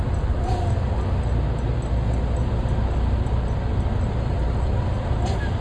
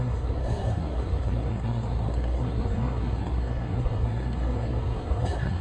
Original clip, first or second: first